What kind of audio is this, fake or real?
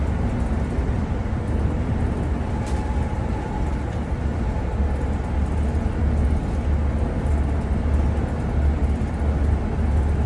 real